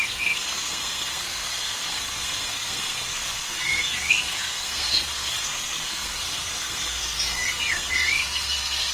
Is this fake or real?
fake